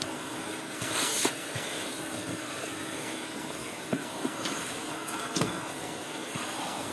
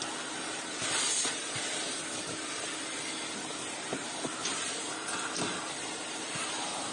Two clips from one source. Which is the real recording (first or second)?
second